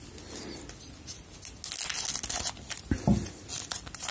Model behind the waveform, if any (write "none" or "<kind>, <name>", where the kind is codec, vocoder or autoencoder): none